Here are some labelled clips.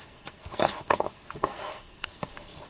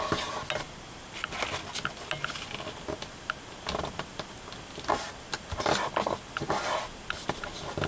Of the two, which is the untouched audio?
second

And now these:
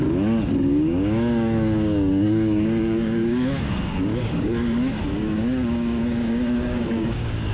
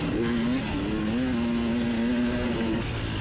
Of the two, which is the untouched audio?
second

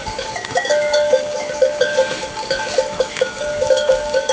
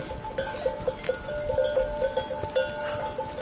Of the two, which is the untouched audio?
second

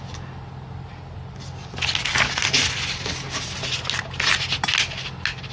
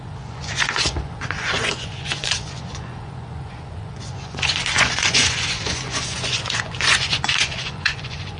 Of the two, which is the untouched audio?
first